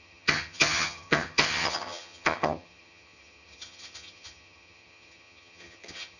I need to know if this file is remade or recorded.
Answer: remade